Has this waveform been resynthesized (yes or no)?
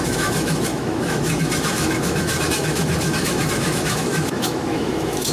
yes